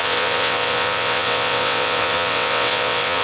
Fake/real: fake